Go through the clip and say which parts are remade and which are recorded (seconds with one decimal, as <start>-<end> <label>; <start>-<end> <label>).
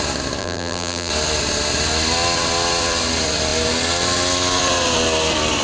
0.0-0.4 recorded; 0.4-1.1 remade; 1.1-5.6 recorded